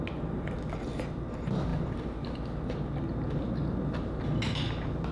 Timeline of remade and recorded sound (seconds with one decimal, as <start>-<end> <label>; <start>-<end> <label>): 0.0-5.1 recorded

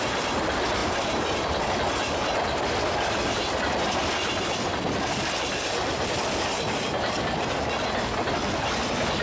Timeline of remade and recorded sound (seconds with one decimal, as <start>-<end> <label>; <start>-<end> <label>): 0.0-9.2 recorded

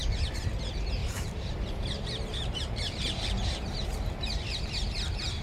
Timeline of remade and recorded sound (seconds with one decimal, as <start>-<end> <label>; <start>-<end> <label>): 0.0-1.0 recorded; 1.0-4.2 remade; 4.2-5.4 recorded

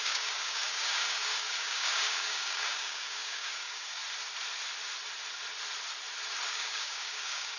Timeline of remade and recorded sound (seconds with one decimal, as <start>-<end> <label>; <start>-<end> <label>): 0.0-4.0 remade; 4.0-6.5 recorded; 6.5-7.6 remade

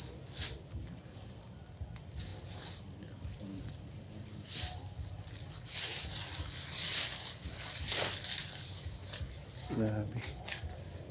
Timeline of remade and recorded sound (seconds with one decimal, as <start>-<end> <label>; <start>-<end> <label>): 0.0-11.1 recorded